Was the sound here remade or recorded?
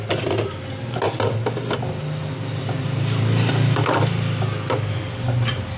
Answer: recorded